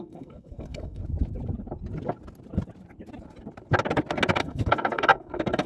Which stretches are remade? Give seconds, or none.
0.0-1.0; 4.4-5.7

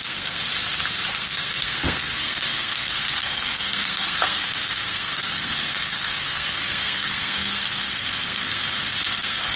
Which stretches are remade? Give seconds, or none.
0.0-0.4; 1.1-9.6

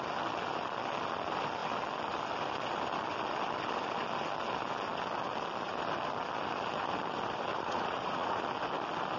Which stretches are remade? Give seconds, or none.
7.5-8.4

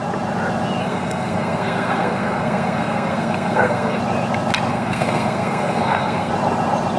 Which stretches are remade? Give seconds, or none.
0.8-4.0; 4.7-6.3

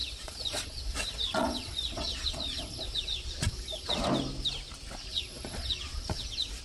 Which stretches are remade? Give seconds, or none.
0.0-4.0; 5.1-6.6

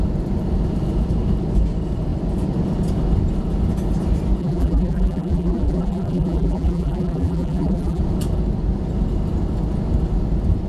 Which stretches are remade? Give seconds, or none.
4.4-8.0